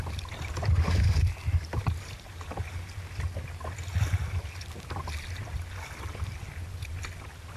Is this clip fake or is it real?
real